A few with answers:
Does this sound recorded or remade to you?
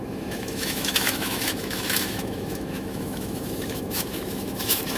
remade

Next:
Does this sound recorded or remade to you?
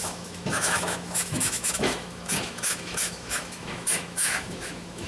remade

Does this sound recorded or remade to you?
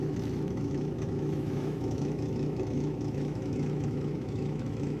remade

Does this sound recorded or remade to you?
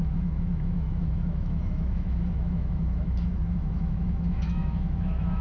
remade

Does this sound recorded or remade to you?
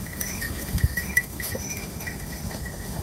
remade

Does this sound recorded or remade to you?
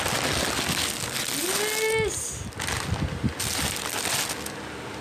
recorded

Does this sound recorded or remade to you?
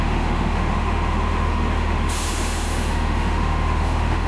remade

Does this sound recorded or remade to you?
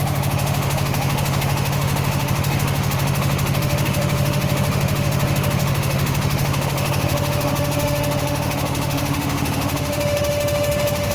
remade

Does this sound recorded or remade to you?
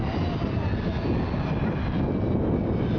recorded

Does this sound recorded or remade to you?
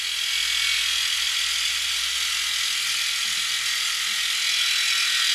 recorded